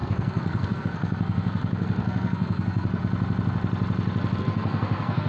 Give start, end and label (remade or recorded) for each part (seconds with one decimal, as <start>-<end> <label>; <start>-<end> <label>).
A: 0.0-3.0 remade; 3.0-4.4 recorded; 4.4-5.3 remade